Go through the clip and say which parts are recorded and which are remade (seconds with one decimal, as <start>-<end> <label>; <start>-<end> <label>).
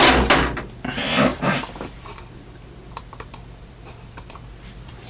0.0-1.3 recorded; 1.3-4.4 remade; 4.4-5.1 recorded